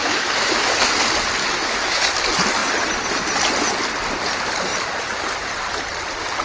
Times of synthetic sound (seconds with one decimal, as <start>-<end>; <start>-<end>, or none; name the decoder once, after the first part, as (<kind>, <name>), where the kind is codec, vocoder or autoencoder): 0.0-0.7 (autoencoder, DAC-VAE); 1.4-2.1